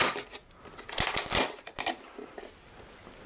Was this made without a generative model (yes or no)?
yes